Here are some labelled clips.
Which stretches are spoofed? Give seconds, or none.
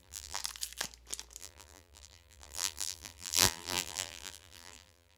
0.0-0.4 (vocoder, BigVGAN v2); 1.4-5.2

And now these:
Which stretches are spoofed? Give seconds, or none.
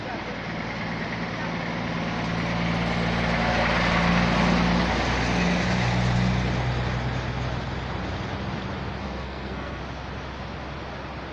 9.0-9.8 (codec, SNAC)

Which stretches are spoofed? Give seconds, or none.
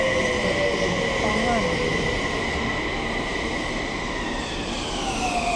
none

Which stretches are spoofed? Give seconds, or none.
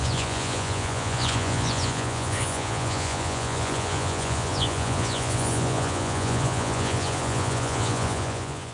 0.0-8.7 (vocoder, Vocos)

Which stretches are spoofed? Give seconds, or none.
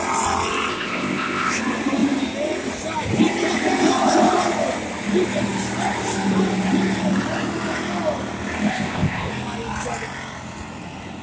0.7-1.6 (codec, ZipCodec); 8.7-9.3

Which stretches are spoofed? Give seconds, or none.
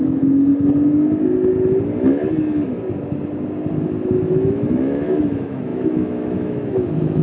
0.0-0.5 (autoencoder, DAC-VAE); 4.3-7.2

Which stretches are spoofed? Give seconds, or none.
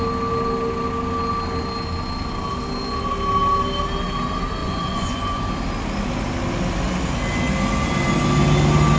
4.6-5.4 (vocoder, Vocos)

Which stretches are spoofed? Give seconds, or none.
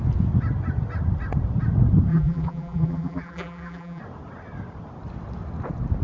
2.1-4.0 (vocoder, BigVGAN v2)